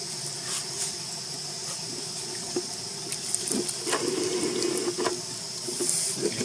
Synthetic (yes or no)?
no